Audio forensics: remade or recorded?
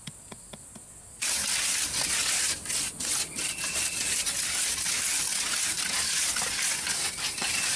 recorded